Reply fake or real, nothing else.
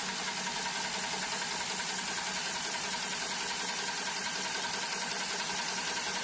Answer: real